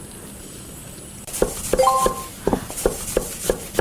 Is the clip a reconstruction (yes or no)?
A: no